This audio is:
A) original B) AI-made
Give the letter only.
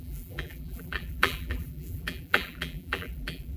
B